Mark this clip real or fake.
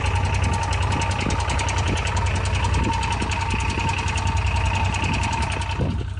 real